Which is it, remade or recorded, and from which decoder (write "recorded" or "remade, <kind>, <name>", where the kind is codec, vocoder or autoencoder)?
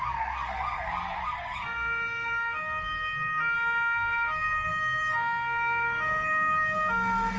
remade, codec, SNAC